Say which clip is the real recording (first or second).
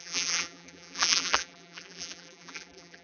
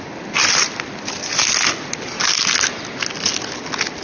second